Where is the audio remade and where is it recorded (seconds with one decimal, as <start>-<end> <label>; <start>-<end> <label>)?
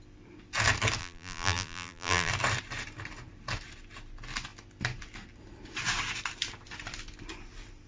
0.0-1.0 recorded; 1.0-2.3 remade; 2.3-7.9 recorded